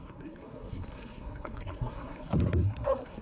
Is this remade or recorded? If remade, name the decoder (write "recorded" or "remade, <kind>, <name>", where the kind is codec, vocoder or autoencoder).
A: remade, codec, SNAC